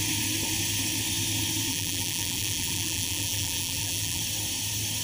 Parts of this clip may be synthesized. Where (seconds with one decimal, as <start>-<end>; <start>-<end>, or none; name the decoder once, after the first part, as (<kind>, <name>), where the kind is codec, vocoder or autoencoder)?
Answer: 1.7-4.2 (vocoder, BigVGAN v2)